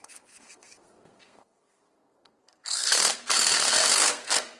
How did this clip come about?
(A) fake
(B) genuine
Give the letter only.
A